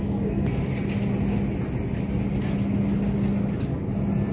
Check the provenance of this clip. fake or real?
real